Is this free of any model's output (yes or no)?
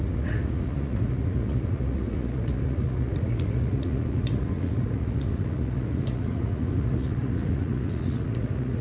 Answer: no